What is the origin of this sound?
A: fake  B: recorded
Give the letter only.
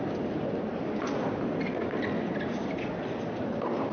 B